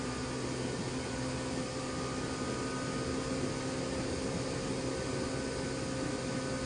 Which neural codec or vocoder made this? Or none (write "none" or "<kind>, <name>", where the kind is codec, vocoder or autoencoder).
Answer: none